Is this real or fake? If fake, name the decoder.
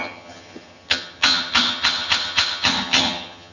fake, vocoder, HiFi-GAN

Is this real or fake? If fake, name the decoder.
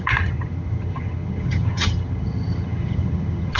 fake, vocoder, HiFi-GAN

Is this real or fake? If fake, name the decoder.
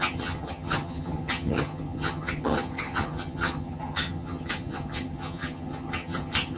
fake, vocoder, HiFi-GAN